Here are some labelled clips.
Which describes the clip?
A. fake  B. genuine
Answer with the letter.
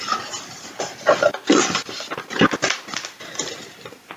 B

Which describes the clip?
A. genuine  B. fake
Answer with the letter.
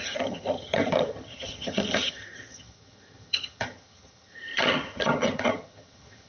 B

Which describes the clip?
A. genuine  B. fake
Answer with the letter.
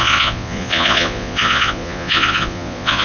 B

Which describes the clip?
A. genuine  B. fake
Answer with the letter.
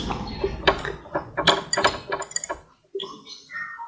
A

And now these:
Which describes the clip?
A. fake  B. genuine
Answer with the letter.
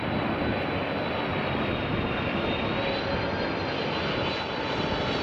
B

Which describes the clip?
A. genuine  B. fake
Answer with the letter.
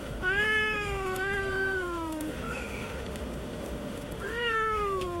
B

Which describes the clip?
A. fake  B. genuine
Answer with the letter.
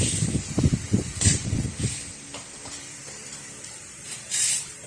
A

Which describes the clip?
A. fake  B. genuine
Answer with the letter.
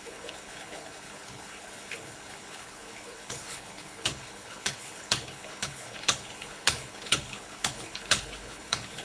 A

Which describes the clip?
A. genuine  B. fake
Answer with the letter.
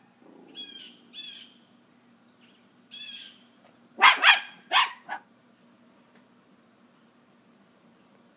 B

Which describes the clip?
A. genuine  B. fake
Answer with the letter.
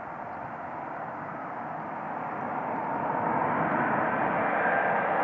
A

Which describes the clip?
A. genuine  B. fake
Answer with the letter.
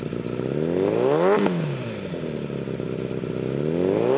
A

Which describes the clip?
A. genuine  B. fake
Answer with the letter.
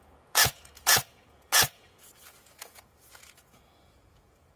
B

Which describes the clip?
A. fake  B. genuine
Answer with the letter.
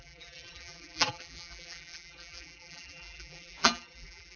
A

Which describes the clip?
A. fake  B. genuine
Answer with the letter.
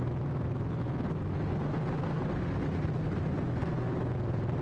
B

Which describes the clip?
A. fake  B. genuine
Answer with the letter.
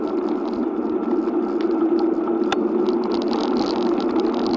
B